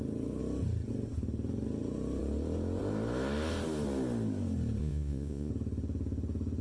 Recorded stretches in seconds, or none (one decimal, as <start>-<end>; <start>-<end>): 0.0-4.8; 5.5-6.6